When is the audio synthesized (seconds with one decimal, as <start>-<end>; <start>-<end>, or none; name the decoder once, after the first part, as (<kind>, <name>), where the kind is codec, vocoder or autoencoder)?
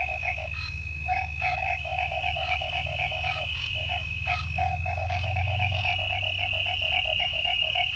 0.0-5.9 (codec, DAC); 7.2-8.0